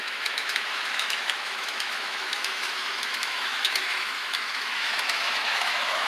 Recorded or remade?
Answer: remade